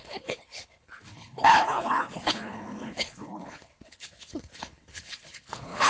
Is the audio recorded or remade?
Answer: remade